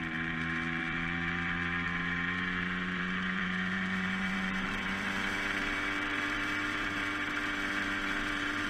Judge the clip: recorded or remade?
remade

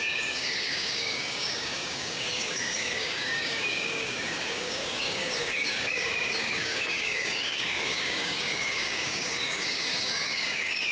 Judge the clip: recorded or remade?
remade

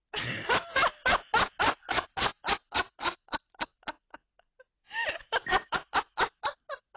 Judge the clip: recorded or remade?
recorded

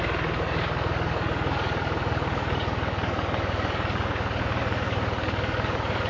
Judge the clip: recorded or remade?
remade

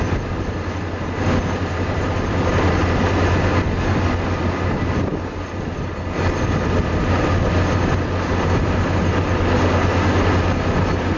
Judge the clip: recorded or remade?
recorded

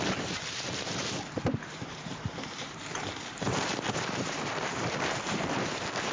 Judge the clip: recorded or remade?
remade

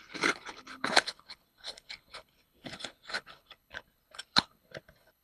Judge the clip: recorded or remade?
remade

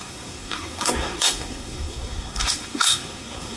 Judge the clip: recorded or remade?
remade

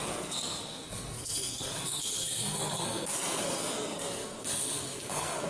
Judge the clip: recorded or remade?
remade